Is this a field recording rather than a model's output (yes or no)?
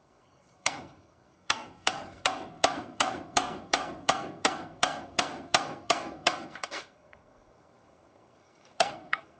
no